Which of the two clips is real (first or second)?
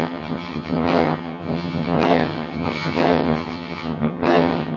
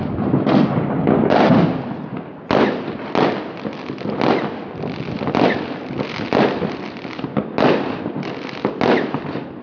second